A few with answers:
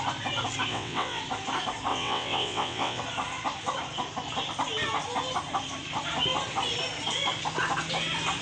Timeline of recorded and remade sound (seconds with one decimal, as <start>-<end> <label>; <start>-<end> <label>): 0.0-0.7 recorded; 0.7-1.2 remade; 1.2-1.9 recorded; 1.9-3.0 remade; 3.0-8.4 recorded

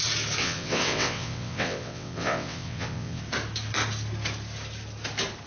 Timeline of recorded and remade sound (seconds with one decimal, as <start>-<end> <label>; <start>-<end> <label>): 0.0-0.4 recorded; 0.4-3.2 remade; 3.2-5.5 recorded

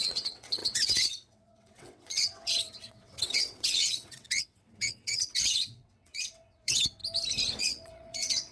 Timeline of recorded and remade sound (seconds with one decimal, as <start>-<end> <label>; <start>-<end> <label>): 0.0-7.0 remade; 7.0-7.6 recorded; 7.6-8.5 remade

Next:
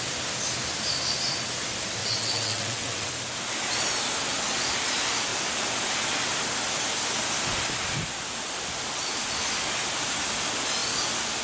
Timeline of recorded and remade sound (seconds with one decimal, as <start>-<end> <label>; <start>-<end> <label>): 0.0-2.0 recorded; 2.0-3.1 remade; 3.1-11.4 recorded

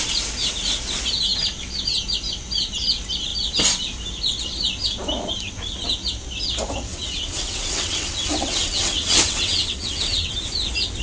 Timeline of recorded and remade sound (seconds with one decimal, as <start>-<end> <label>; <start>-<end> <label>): 0.0-6.9 recorded; 6.9-10.3 remade; 10.3-11.0 recorded

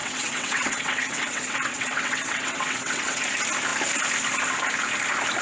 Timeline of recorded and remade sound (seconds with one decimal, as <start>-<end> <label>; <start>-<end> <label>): 0.0-3.2 remade; 3.2-5.4 recorded

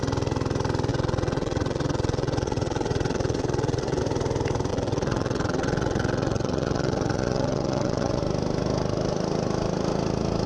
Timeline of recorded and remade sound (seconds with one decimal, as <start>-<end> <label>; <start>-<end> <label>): 0.0-0.9 recorded; 0.9-4.0 remade; 4.0-4.7 recorded; 4.7-8.2 remade; 8.2-10.5 recorded